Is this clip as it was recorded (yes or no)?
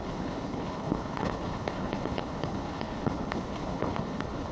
no